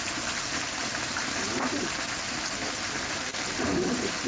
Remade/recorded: recorded